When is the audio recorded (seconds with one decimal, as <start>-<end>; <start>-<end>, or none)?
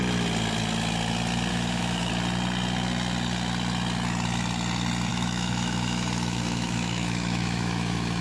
0.0-1.5; 2.1-5.1